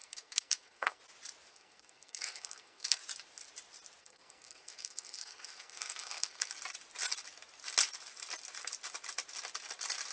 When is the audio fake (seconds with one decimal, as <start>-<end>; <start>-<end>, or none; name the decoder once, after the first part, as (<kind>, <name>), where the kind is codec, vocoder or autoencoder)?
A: 0.0-1.0 (codec, SNAC); 1.5-3.0; 4.0-6.5